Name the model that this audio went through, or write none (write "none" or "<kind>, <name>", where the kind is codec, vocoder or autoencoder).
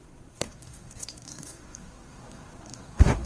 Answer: codec, SNAC